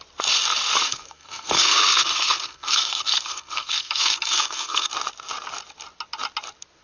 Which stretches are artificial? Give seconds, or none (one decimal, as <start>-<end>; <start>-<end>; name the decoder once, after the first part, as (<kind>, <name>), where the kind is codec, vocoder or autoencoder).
0.8-4.9 (codec, SNAC)